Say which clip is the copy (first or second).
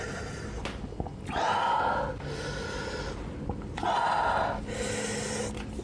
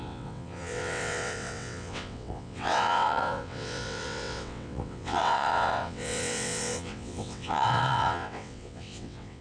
second